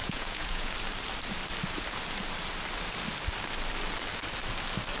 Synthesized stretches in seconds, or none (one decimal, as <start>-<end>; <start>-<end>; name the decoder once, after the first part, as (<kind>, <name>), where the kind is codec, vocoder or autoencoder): 0.0-0.7 (vocoder, Vocos)